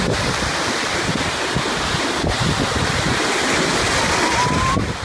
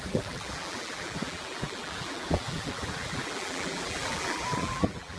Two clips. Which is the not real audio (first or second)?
second